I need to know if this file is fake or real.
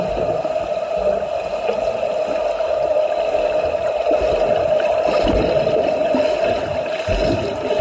real